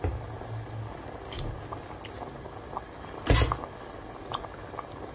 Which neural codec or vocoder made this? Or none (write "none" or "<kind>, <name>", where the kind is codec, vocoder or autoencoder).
none